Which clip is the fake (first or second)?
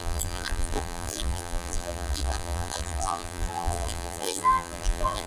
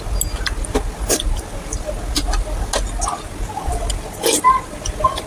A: first